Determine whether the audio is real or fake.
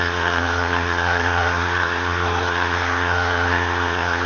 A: fake